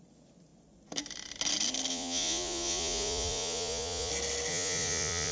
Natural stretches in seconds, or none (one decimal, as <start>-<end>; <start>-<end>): 0.0-1.9; 4.1-4.5